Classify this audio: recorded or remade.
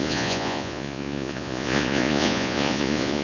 remade